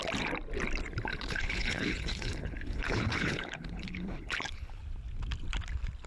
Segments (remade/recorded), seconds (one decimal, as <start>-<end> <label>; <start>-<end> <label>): 0.0-1.1 recorded; 1.1-4.8 remade; 4.8-6.1 recorded